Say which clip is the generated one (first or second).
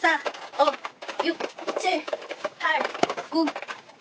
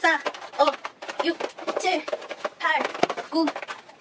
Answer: first